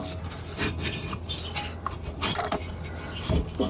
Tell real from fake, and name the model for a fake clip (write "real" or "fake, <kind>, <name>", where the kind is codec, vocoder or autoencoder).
real